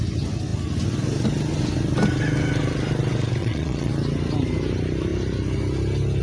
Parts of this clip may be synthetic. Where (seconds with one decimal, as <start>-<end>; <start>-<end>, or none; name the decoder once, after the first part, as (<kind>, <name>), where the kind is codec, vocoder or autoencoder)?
3.4-3.9 (vocoder, Vocos)